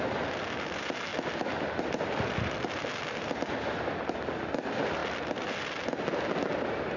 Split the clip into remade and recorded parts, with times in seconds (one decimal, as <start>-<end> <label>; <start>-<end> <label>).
0.0-7.0 recorded